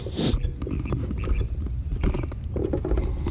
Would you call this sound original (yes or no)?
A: yes